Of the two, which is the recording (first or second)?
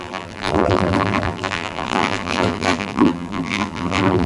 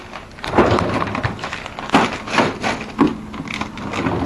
second